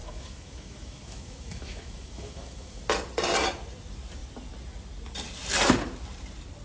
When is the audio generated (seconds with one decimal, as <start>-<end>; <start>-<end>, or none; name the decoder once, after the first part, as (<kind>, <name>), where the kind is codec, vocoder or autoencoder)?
0.0-2.8 (autoencoder, DAC-VAE)